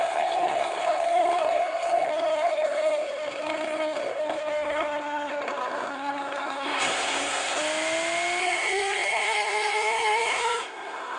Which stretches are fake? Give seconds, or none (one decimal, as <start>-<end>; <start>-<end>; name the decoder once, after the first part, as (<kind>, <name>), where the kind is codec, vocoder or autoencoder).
0.0-7.6 (codec, SNAC); 8.4-11.2